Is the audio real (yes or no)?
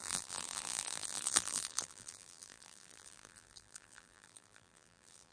no